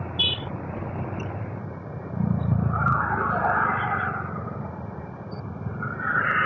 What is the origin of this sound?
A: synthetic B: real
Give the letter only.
B